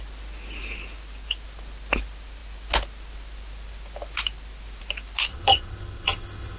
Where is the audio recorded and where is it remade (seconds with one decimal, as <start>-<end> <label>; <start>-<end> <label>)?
0.0-5.3 recorded; 5.3-6.6 remade